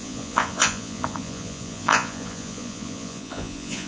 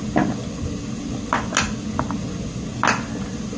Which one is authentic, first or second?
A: second